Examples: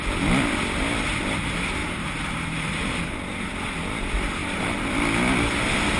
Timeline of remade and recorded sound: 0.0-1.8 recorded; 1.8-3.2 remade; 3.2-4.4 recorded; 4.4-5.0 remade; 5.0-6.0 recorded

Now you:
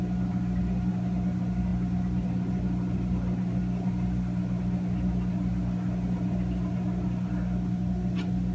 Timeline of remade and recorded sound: 0.0-8.5 recorded

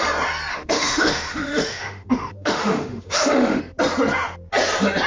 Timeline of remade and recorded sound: 0.0-0.5 recorded; 0.5-3.6 remade; 3.6-5.1 recorded

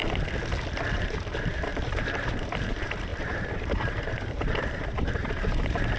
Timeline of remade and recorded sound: 0.0-0.9 recorded; 0.9-6.0 remade

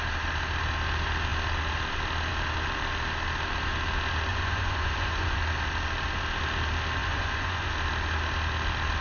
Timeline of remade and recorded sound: 0.0-4.3 recorded; 4.3-5.4 remade; 5.4-7.0 recorded; 7.0-7.7 remade; 7.7-9.0 recorded